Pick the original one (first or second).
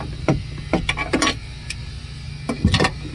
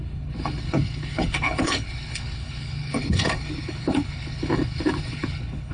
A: first